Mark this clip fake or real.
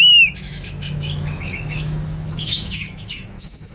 fake